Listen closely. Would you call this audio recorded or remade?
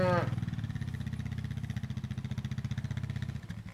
recorded